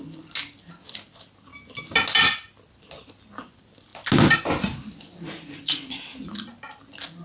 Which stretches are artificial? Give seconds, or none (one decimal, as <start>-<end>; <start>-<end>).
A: none